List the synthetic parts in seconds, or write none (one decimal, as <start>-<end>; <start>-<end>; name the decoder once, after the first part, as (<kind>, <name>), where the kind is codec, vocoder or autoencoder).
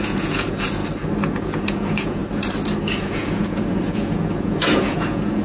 0.0-0.8 (vocoder, Vocos); 1.4-2.2; 2.8-5.4